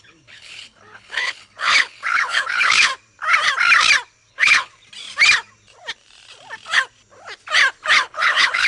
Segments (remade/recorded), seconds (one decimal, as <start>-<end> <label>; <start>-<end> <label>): 0.0-2.9 remade; 2.9-4.3 recorded; 4.3-4.7 remade; 4.7-8.0 recorded; 8.0-8.7 remade